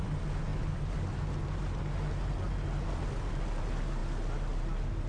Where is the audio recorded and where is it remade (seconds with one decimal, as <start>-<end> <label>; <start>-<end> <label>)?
0.0-5.1 recorded